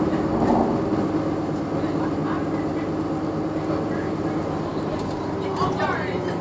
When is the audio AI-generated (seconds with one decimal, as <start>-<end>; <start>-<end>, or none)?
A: none